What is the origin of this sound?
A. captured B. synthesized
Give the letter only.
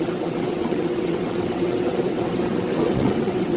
B